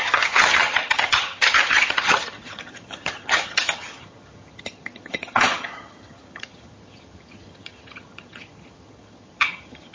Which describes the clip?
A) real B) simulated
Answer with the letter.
B